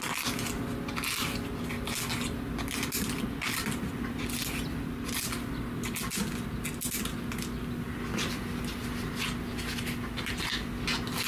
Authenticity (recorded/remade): recorded